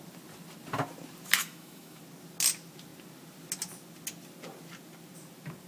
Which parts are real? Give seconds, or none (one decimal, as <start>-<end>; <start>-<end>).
0.0-1.4; 2.0-5.7